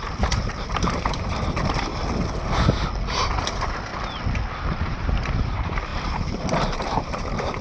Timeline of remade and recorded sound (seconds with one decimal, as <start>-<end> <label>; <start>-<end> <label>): 0.0-1.9 remade; 1.9-3.2 recorded; 3.2-3.9 remade; 3.9-4.8 recorded; 4.8-7.6 remade